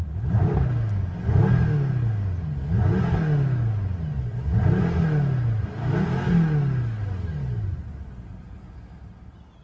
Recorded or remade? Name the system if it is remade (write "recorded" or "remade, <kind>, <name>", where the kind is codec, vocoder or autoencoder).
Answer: recorded